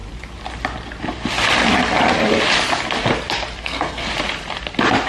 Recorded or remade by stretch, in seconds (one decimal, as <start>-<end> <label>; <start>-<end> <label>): 0.0-3.6 recorded; 3.6-4.1 remade; 4.1-5.1 recorded